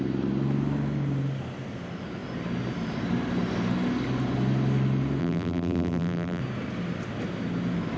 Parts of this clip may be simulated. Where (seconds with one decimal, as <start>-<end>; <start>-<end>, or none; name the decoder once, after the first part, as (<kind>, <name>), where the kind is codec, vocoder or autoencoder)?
5.2-6.4 (vocoder, BigVGAN v2)